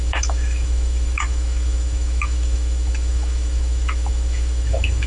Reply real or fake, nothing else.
fake